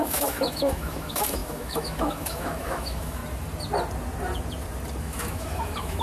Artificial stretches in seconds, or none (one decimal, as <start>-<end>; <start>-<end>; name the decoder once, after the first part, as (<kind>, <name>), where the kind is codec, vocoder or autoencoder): 0.0-3.2 (autoencoder, DAC-VAE); 5.0-6.0